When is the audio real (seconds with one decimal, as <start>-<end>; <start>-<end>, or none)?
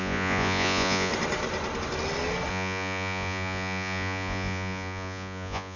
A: 1.1-2.5